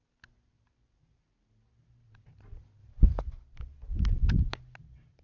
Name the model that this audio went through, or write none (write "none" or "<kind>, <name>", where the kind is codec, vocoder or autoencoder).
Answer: none